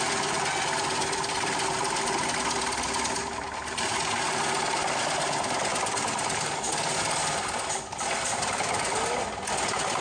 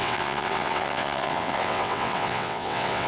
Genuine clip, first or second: first